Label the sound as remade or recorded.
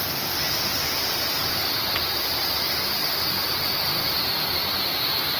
recorded